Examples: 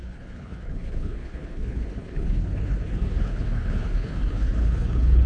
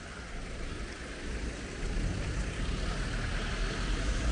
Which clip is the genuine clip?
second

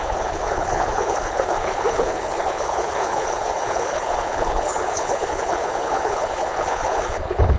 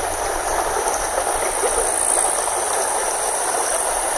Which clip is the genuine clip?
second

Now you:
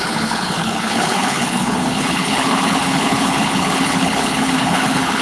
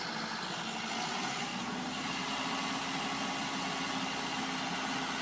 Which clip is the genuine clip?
second